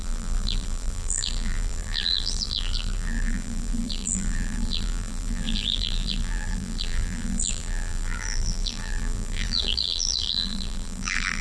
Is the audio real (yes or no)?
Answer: no